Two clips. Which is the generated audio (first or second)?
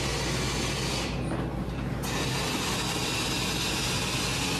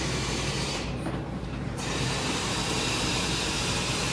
second